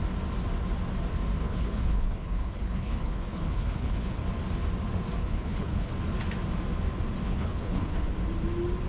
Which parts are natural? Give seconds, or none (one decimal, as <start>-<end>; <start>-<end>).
0.0-1.4; 4.2-5.2; 5.9-7.2; 8.1-8.9

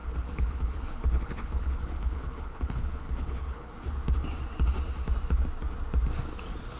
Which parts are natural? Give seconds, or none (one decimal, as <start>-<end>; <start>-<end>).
3.7-6.8

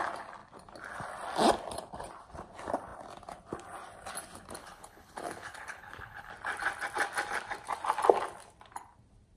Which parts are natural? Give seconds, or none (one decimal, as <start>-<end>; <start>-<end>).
0.0-4.6; 6.3-9.4

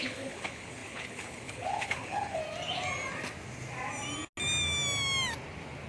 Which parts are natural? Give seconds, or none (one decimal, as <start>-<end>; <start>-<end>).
2.4-5.9

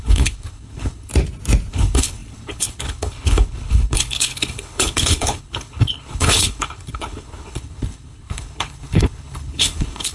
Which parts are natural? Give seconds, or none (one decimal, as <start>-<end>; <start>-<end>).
1.1-1.7

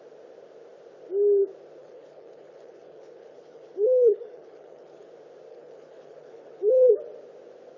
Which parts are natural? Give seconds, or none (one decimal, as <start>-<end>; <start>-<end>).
0.0-1.8; 5.1-5.5; 6.9-7.8

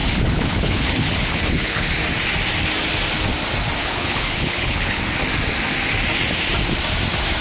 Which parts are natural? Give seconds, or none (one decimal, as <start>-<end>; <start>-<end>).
1.9-3.8; 5.0-7.4